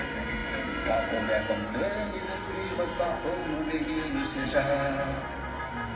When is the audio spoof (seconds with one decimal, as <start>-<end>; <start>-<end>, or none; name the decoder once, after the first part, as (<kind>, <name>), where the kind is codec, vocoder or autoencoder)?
0.4-1.2 (vocoder, BigVGAN v2)